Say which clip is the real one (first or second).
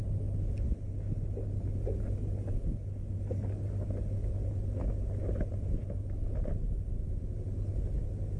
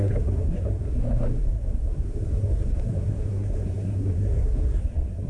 first